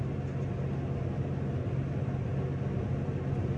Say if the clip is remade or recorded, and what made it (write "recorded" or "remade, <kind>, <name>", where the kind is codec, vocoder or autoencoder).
recorded